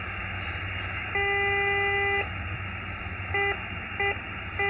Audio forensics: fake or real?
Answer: real